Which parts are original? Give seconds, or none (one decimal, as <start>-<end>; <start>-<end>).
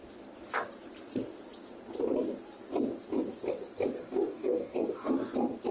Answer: 0.0-4.0; 5.1-5.7